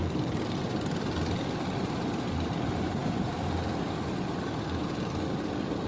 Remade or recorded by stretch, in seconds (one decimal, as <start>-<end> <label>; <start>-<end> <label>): 0.0-5.9 recorded